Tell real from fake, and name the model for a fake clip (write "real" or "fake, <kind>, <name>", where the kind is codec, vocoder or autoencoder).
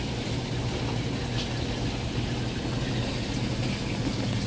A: real